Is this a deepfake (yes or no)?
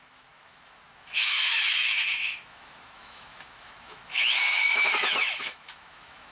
yes